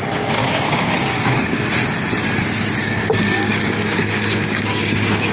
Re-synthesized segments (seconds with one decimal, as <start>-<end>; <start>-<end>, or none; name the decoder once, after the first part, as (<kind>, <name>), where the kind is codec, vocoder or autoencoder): 0.4-1.7 (codec, DAC); 2.8-5.3

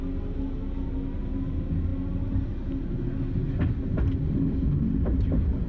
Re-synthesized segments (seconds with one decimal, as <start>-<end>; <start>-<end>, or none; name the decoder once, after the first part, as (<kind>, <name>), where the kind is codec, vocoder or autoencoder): none

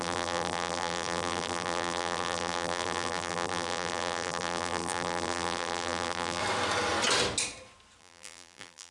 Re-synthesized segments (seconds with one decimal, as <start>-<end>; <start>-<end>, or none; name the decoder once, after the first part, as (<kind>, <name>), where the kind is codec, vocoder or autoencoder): 0.0-6.4 (vocoder, BigVGAN v2); 8.0-8.9